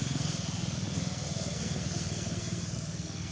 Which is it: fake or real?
fake